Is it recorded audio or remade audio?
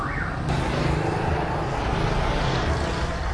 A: recorded